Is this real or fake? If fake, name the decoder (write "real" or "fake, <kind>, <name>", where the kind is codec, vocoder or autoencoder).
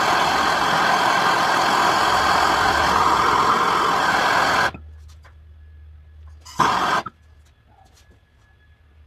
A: real